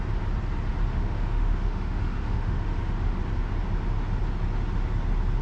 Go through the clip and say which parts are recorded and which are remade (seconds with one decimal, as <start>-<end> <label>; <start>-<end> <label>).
0.0-0.9 recorded; 0.9-3.2 remade; 3.2-5.4 recorded

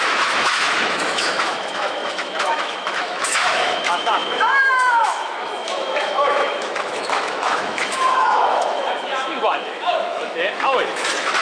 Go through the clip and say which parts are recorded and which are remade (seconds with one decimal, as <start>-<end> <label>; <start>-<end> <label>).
0.0-11.4 remade

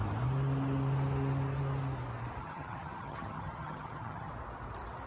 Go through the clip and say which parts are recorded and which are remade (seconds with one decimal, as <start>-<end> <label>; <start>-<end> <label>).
0.0-2.4 recorded; 2.4-4.3 remade; 4.3-5.1 recorded

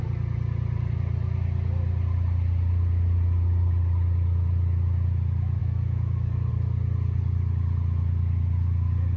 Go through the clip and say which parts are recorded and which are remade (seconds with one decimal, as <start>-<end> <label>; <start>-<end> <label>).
0.0-5.6 recorded; 5.6-6.5 remade; 6.5-9.2 recorded

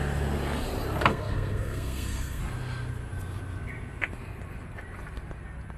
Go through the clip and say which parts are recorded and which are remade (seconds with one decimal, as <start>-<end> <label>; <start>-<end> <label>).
0.0-1.1 recorded; 1.1-2.4 remade; 2.4-5.8 recorded

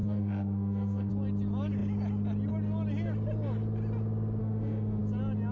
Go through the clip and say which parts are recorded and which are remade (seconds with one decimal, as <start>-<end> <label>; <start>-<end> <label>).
0.0-1.1 remade; 1.1-4.4 recorded; 4.4-5.0 remade; 5.0-5.5 recorded

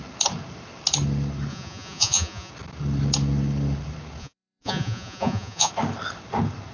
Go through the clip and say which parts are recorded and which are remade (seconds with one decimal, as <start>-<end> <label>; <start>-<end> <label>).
0.0-1.5 recorded; 1.5-2.5 remade; 2.5-4.2 recorded; 4.2-5.7 remade; 5.7-6.7 recorded